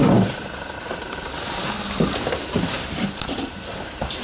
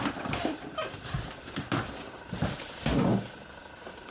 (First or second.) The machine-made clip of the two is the first